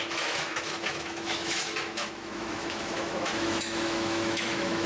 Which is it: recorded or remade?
remade